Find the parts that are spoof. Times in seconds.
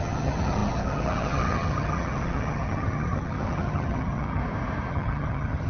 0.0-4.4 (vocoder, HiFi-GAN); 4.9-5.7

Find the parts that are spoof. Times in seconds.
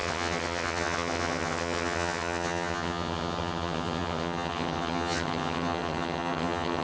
0.0-6.8 (vocoder, HiFi-GAN)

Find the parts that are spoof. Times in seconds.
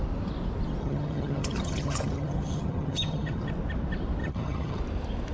0.8-3.5 (vocoder, HiFi-GAN); 4.2-4.8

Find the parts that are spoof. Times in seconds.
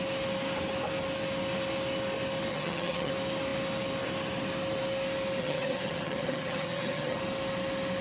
2.5-3.1 (vocoder, HiFi-GAN); 5.4-7.2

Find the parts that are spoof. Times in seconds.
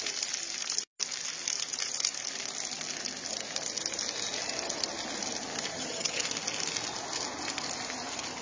5.7-6.2 (vocoder, HiFi-GAN)